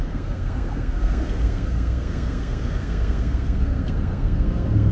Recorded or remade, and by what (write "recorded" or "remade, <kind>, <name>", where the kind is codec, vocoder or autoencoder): remade, codec, SNAC